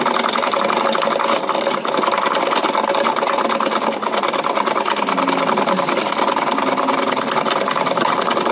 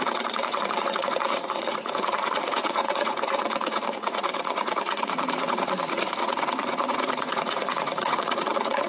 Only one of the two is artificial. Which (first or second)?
second